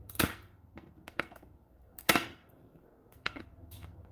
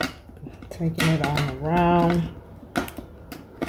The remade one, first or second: first